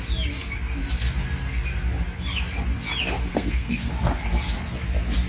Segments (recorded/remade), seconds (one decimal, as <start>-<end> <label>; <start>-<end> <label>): 0.0-3.3 recorded; 3.3-3.9 remade; 3.9-5.3 recorded